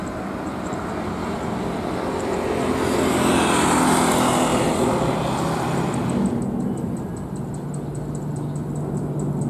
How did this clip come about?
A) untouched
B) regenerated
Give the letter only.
A